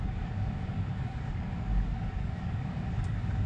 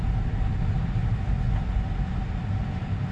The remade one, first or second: first